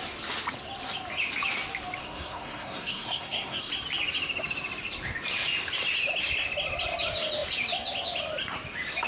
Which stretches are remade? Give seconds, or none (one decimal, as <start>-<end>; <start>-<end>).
2.0-3.7

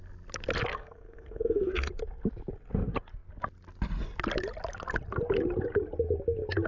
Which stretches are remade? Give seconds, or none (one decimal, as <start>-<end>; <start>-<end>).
0.7-1.9

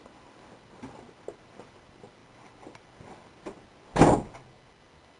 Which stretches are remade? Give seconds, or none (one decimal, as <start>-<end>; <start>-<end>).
none

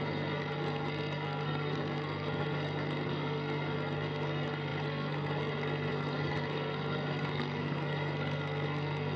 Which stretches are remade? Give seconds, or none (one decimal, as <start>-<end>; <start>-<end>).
0.0-9.2